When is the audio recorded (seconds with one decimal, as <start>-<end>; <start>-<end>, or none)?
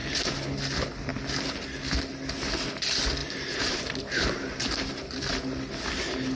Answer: 0.6-3.2; 5.2-6.4